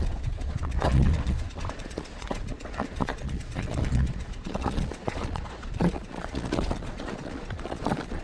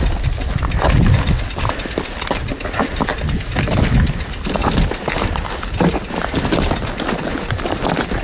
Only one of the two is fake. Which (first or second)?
first